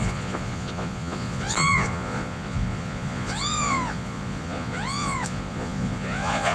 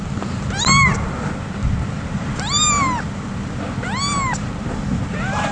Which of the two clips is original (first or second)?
second